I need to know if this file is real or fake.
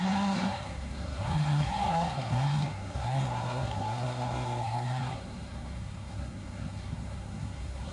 fake